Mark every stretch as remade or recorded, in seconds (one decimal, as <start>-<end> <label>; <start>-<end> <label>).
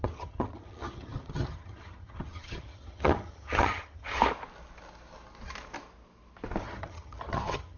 0.0-4.2 remade; 4.2-6.6 recorded; 6.6-7.8 remade